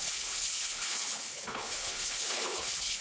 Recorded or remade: remade